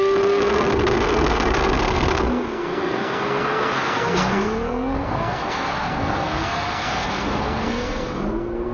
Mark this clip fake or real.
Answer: fake